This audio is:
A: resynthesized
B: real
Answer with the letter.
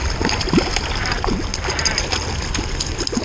B